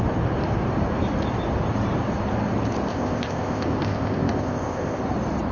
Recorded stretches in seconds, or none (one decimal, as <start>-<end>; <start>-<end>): 0.0-2.9; 5.0-5.5